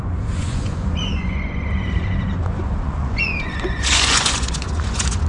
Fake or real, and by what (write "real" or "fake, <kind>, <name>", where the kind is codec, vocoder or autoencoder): fake, vocoder, Vocos